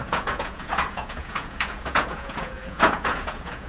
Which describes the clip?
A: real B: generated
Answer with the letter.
B